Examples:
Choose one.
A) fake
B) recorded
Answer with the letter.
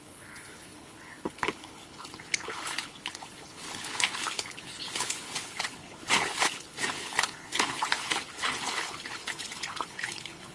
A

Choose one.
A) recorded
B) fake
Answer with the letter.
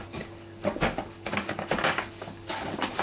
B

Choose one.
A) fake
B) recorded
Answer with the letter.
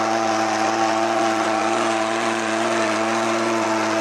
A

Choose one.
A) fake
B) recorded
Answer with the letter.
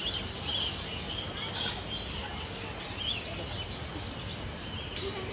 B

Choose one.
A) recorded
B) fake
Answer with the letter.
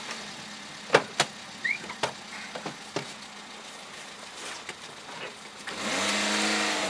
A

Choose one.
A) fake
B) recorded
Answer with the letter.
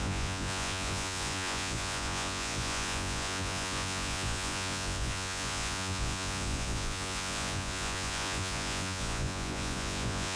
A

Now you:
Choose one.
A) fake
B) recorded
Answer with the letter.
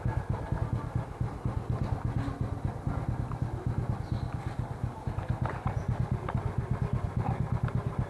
B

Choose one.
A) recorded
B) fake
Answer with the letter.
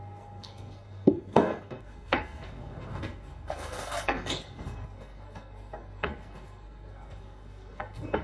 B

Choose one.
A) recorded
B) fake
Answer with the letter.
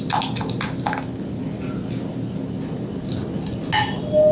A